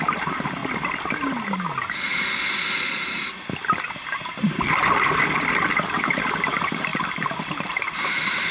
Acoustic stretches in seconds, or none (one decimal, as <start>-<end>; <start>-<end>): 0.0-6.9; 8.0-8.5